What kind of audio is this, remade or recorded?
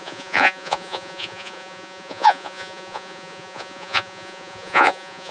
remade